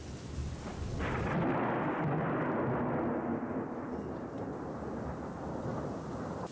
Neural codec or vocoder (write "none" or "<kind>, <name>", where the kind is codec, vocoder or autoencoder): none